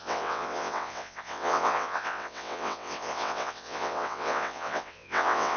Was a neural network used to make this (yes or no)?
yes